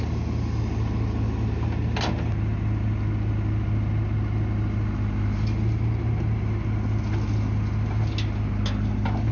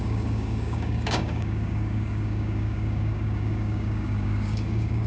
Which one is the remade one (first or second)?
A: second